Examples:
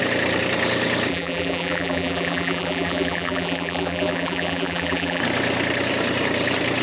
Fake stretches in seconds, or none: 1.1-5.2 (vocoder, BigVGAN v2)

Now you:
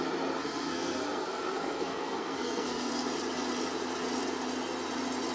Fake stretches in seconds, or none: 0.4-2.9 (codec, SNAC)

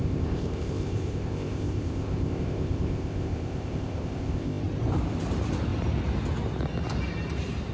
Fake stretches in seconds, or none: 0.0-4.6 (codec, ZipCodec)

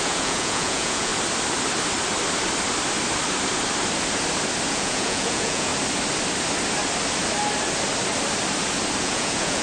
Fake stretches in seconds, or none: 0.0-1.1 (vocoder, Vocos); 4.7-5.7; 9.0-9.6

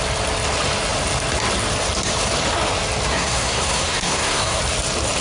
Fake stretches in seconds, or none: 3.1-4.6 (codec, SNAC)

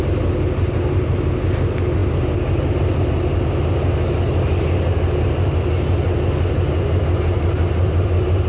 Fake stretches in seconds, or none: none

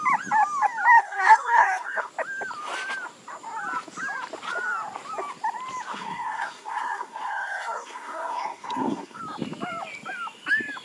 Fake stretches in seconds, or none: 1.0-2.1 (codec, SNAC); 5.9-9.2

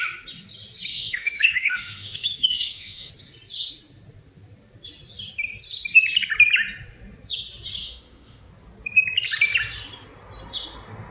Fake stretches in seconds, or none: 0.9-3.1 (autoencoder, DAC-VAE); 7.8-8.5